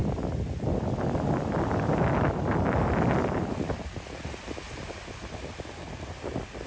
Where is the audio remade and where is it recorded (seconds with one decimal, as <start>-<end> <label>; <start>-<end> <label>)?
0.0-6.7 recorded